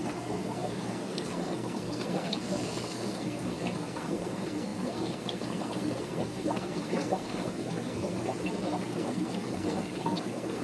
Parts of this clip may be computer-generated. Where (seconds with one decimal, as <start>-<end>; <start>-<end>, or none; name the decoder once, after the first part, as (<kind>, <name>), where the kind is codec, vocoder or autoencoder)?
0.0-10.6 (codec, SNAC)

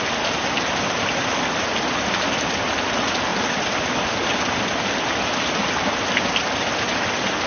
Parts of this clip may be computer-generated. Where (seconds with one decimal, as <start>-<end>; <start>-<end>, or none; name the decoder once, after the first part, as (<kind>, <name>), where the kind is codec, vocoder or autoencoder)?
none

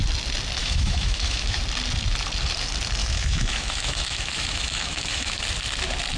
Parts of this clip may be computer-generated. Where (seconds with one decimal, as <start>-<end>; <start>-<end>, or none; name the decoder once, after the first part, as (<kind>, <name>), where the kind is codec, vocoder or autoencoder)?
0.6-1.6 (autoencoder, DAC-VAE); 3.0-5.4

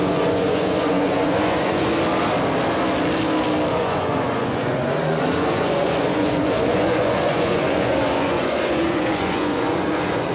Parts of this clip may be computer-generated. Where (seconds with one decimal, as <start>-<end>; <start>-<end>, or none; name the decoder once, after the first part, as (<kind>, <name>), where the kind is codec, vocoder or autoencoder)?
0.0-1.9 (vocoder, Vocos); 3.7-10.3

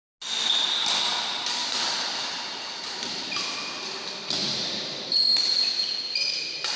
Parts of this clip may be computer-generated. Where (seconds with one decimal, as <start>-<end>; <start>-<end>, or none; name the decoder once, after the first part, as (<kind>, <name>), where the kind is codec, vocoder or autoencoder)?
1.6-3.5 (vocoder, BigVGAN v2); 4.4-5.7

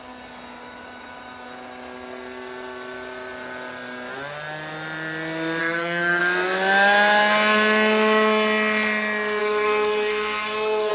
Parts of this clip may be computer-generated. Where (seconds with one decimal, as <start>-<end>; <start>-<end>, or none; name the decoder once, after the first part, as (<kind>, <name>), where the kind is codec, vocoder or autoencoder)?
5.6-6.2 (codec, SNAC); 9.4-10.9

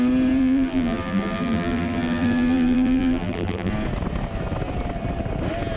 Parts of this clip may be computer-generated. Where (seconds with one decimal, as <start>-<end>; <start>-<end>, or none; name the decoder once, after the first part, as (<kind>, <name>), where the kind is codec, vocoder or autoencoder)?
0.4-3.7 (vocoder, BigVGAN v2)

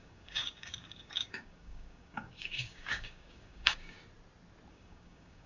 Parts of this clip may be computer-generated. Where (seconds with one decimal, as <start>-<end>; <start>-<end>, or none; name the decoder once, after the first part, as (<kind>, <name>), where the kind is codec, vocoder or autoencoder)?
0.0-4.0 (codec, DAC); 4.7-5.5